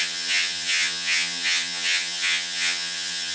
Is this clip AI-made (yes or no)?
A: yes